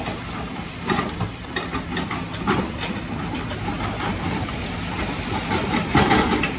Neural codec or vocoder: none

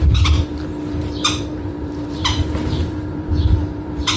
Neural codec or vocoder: vocoder, BigVGAN v2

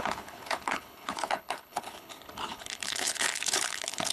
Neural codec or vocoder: codec, HILCodec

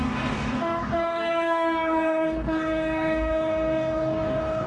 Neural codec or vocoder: codec, DAC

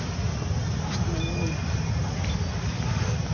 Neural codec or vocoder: none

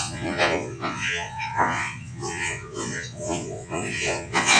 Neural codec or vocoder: vocoder, Vocos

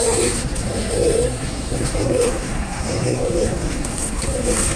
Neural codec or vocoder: codec, SNAC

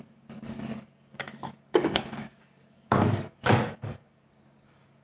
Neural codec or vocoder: codec, DAC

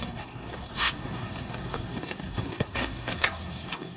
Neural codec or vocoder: codec, SNAC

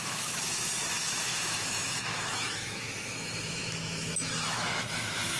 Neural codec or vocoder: autoencoder, DAC-VAE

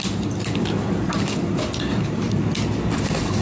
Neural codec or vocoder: none